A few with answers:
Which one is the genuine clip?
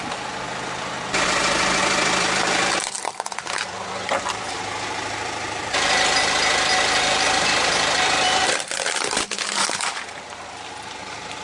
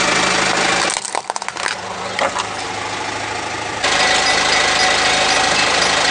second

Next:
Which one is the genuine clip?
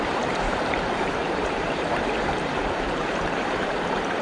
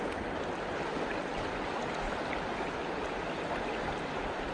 second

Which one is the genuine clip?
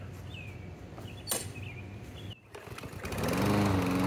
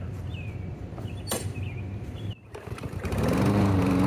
first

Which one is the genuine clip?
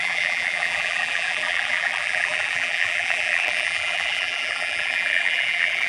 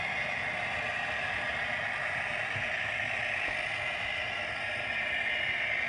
second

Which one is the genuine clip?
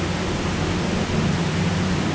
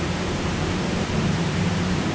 first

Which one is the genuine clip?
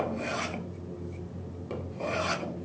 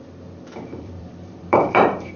first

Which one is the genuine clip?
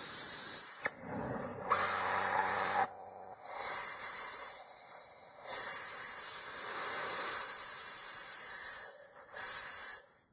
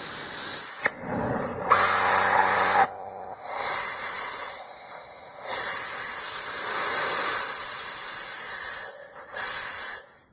second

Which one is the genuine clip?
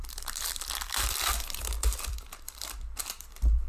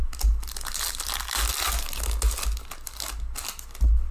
second